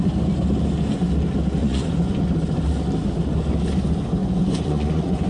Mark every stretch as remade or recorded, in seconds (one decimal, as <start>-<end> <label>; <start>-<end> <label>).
0.0-1.6 recorded; 1.6-2.2 remade; 2.2-4.2 recorded; 4.2-5.3 remade

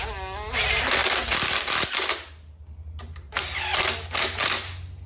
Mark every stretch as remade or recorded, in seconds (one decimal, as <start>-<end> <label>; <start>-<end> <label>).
0.0-5.1 recorded

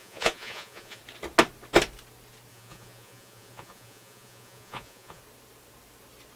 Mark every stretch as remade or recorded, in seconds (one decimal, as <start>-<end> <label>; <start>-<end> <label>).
0.0-1.0 remade; 1.0-2.5 recorded; 2.5-5.2 remade; 5.2-6.4 recorded

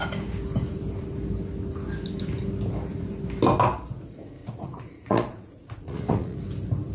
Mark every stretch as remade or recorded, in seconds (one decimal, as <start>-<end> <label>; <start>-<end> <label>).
0.0-4.4 recorded; 4.4-6.4 remade; 6.4-6.9 recorded

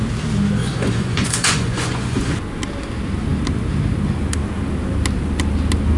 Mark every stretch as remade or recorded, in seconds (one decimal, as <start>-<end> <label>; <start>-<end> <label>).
0.0-0.6 recorded; 0.6-2.3 remade; 2.3-6.0 recorded

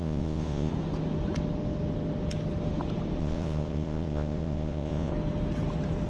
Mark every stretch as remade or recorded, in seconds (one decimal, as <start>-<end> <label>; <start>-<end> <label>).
0.0-0.7 remade; 0.7-3.2 recorded; 3.2-5.1 remade; 5.1-6.1 recorded

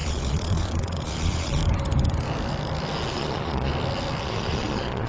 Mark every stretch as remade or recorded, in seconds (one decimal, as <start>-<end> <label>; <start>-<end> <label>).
0.0-1.6 remade; 1.6-3.1 recorded; 3.1-3.7 remade; 3.7-4.2 recorded; 4.2-5.1 remade